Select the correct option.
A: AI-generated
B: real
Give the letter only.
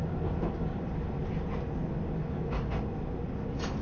B